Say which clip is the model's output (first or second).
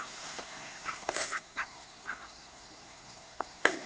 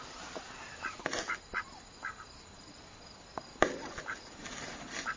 first